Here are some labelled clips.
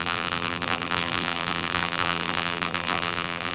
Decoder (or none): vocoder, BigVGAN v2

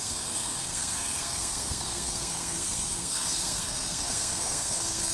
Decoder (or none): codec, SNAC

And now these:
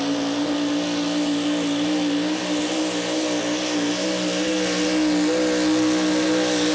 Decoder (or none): none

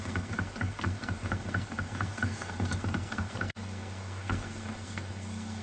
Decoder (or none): codec, SNAC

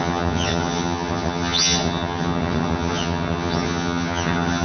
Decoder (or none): vocoder, HiFi-GAN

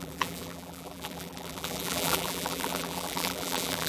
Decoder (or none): vocoder, BigVGAN v2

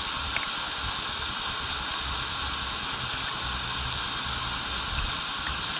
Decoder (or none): none